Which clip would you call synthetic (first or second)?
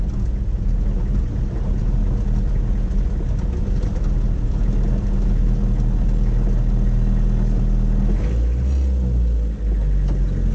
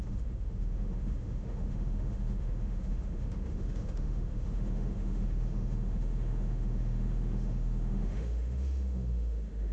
second